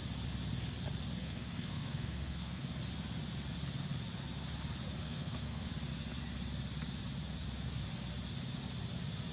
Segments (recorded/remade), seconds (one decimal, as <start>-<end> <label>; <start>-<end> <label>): 0.0-1.2 recorded; 1.2-2.6 remade; 2.6-5.0 recorded; 5.0-5.7 remade; 5.7-9.3 recorded